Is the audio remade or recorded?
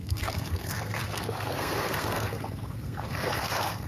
remade